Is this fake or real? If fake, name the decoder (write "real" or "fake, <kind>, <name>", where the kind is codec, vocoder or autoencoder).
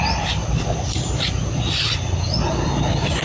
real